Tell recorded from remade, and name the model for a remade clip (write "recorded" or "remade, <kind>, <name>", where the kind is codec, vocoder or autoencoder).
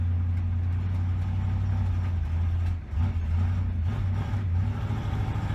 recorded